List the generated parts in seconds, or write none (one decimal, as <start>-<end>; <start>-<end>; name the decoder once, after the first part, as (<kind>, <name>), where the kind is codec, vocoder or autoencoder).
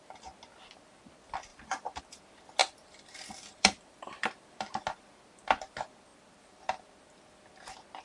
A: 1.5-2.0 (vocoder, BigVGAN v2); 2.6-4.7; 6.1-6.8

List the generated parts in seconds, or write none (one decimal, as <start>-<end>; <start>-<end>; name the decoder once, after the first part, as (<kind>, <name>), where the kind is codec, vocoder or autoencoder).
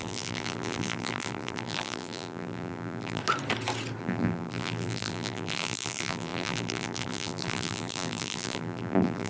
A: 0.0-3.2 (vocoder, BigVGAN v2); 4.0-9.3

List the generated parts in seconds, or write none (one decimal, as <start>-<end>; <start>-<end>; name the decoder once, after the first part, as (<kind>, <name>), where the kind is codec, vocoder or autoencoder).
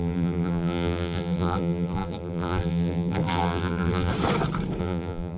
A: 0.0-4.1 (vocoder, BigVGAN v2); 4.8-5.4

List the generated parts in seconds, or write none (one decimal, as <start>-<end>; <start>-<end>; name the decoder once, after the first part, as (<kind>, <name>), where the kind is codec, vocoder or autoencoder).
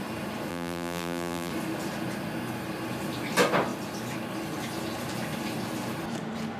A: 0.5-1.5 (vocoder, BigVGAN v2)